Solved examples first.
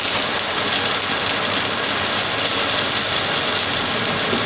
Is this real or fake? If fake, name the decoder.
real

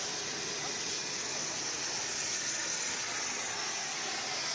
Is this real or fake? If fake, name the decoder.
real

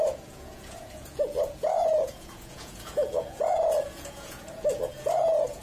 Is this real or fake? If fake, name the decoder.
fake, vocoder, Vocos